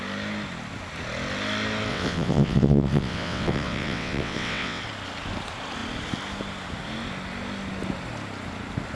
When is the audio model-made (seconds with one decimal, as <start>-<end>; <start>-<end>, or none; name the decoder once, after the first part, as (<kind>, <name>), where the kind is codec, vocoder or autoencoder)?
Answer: 1.9-4.8 (vocoder, WaveNeXt)